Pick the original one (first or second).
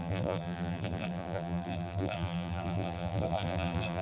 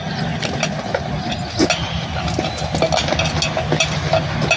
second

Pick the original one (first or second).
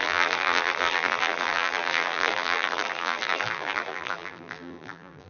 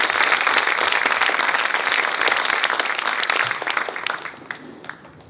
second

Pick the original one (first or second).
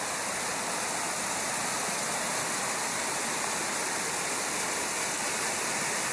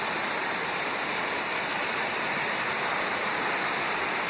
first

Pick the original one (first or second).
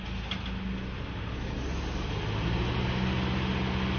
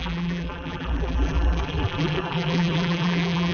first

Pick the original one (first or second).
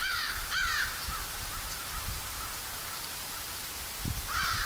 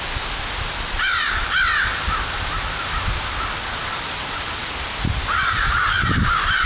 second